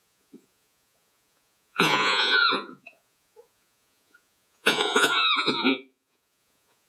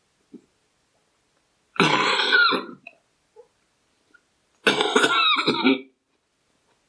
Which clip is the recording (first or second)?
second